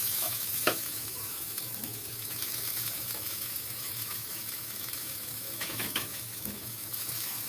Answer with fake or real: fake